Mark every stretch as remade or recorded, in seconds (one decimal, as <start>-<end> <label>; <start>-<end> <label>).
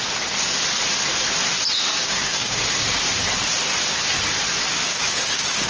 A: 0.0-1.9 recorded; 1.9-2.6 remade; 2.6-4.9 recorded; 4.9-5.7 remade